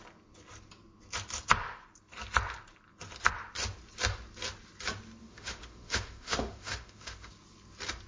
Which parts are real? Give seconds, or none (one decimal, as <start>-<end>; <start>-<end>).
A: 0.0-5.2; 7.3-8.1